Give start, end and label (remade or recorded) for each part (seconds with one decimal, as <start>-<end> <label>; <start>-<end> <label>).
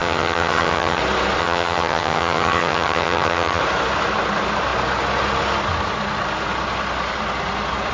0.0-1.0 remade; 1.0-1.4 recorded; 1.4-3.6 remade; 3.6-7.9 recorded